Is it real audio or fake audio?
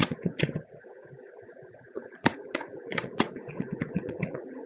fake